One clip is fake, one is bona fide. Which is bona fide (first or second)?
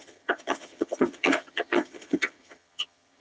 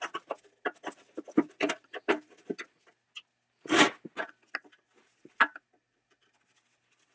second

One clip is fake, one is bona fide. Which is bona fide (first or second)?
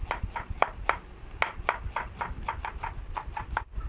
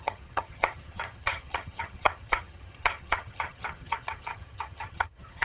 first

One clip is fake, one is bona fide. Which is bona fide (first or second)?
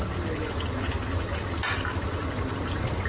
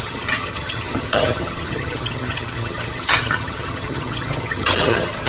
first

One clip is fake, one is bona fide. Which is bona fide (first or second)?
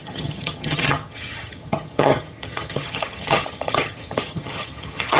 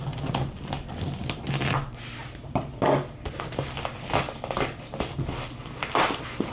second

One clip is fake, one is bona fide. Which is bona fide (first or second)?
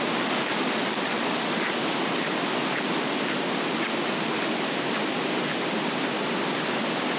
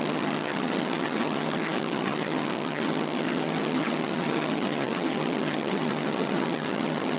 first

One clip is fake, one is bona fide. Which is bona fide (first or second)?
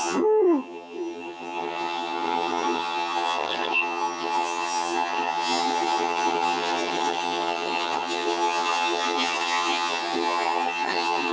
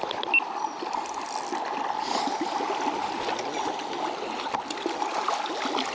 second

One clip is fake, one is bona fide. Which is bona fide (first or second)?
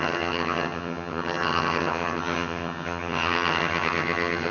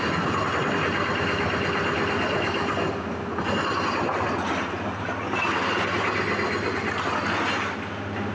second